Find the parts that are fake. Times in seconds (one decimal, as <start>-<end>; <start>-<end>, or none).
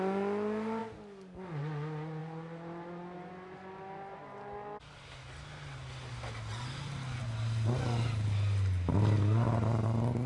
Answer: none